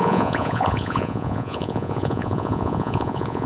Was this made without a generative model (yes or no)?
no